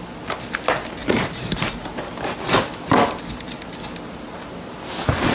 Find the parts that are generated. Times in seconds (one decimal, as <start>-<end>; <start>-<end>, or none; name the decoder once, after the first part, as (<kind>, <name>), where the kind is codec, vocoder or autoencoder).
1.0-2.1 (vocoder, BigVGAN v2)

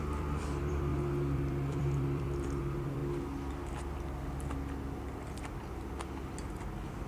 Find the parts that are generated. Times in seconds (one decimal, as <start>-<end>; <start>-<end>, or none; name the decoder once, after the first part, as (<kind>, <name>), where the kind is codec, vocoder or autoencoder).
0.0-3.0 (vocoder, BigVGAN v2); 6.5-7.1